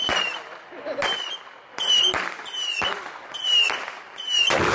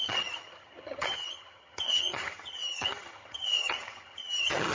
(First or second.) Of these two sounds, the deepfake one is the second